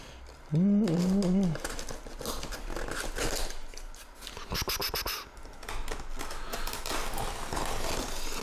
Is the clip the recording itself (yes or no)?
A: yes